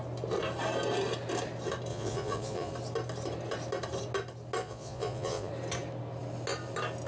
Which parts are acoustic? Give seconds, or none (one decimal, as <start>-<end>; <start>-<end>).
0.0-1.9; 2.7-4.6; 5.5-7.1